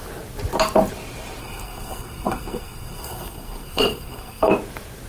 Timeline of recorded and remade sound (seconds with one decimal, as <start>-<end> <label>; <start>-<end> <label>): 0.0-1.4 recorded; 1.4-4.5 remade; 4.5-5.1 recorded